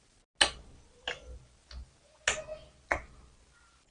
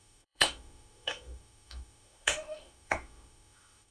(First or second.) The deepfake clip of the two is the second